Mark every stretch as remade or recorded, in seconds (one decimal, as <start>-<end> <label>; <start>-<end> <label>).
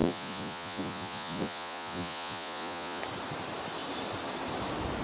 0.0-3.0 remade; 3.0-5.0 recorded